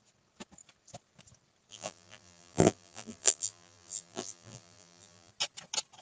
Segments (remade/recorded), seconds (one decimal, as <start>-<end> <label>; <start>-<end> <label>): 0.0-1.7 recorded; 1.7-5.3 remade; 5.3-6.0 recorded

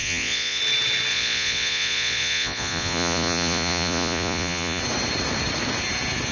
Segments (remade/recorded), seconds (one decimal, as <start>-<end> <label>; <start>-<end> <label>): 0.0-0.6 remade; 0.6-1.1 recorded; 1.1-4.8 remade; 4.8-6.3 recorded

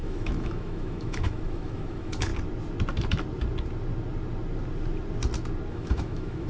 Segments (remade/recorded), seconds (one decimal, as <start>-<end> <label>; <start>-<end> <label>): 0.0-2.3 remade; 2.3-5.7 recorded; 5.7-6.5 remade

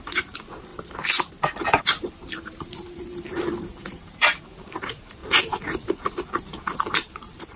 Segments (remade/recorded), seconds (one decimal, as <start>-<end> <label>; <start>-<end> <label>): 0.0-0.7 remade; 0.7-1.8 recorded; 1.8-7.6 remade